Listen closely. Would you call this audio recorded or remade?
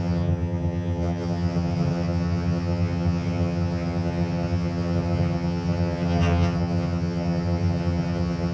remade